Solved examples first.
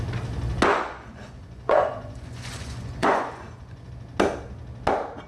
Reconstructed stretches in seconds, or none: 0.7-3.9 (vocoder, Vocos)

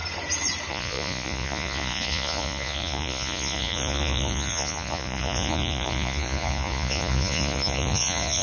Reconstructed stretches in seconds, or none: 0.7-8.4 (vocoder, Vocos)